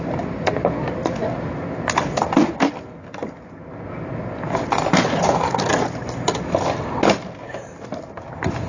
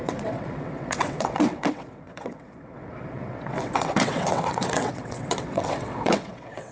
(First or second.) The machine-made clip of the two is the second